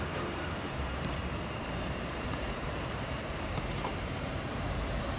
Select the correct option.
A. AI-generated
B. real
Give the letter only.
A